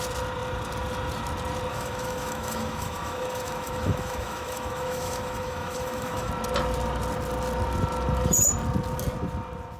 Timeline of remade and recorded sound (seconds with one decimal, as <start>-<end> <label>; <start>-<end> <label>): 0.0-1.7 recorded; 1.7-6.3 remade; 6.3-9.8 recorded